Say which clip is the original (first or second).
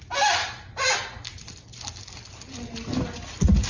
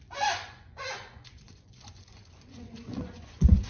first